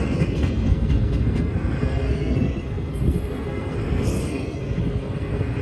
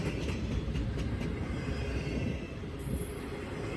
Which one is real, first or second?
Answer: second